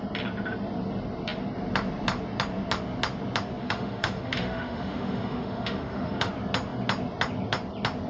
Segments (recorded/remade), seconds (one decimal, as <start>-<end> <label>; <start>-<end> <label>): 0.0-3.6 recorded; 3.6-6.3 remade; 6.3-8.1 recorded